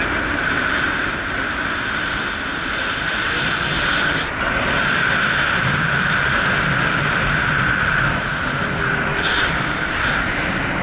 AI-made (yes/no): no